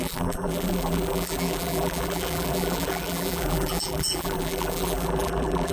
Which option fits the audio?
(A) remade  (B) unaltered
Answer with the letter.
A